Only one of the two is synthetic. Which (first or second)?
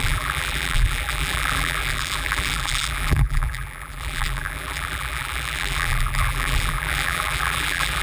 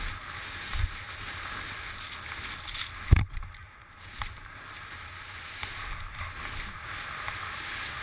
first